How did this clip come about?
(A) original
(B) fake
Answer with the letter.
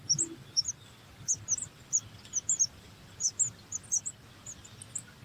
A